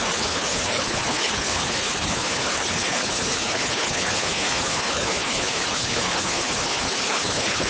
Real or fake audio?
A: fake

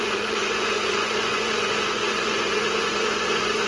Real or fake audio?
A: fake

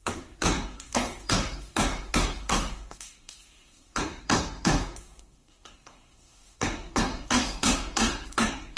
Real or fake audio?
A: fake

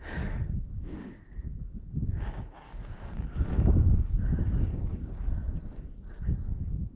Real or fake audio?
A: fake